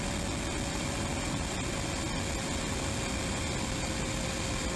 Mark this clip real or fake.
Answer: real